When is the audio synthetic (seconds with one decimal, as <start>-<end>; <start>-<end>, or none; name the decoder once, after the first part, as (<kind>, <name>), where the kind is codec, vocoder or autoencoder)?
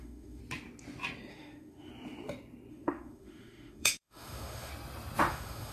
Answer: 0.0-0.4 (autoencoder, DAC-VAE); 1.3-1.9; 2.7-4.7; 5.3-5.7